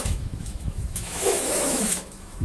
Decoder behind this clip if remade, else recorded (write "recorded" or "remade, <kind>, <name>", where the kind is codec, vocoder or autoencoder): remade, autoencoder, DAC-VAE